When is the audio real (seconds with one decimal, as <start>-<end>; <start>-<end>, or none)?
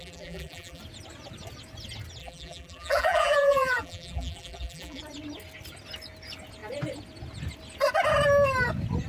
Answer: 0.8-2.2; 5.0-9.1